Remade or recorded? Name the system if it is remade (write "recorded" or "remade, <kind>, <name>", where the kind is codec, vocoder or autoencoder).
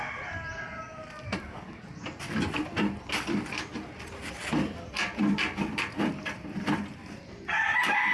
remade, vocoder, BigVGAN v2